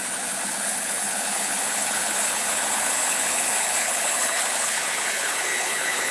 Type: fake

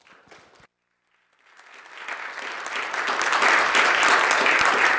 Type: real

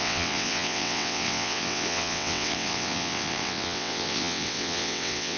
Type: fake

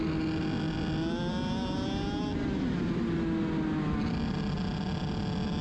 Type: real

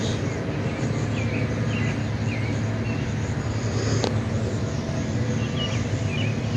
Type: real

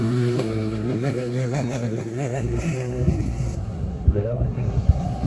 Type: fake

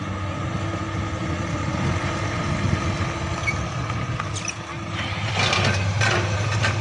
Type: real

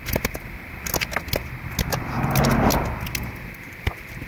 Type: real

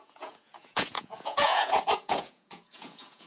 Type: fake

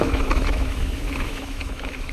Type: fake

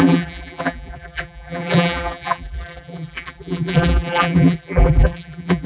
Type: fake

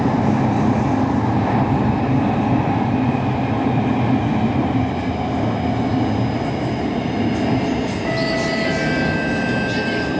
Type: real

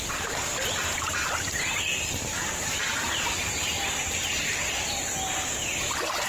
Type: real